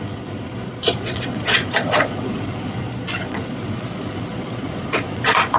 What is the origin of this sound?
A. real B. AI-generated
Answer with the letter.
B